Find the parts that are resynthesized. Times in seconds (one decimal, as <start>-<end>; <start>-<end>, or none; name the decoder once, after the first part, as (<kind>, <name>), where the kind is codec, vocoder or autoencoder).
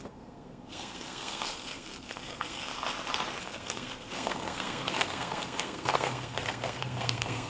0.0-2.7 (codec, SNAC); 3.4-7.5